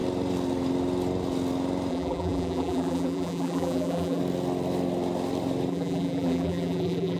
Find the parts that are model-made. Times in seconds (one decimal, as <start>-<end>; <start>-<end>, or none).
1.9-4.2; 5.7-7.2